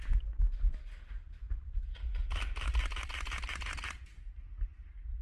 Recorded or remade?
recorded